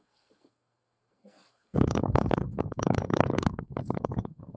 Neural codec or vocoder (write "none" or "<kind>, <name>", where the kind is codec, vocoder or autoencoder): codec, SNAC